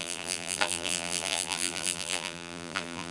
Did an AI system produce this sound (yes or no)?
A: yes